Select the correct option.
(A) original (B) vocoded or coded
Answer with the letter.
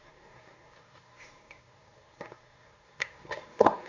B